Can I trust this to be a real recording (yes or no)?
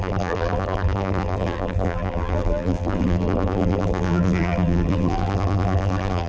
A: no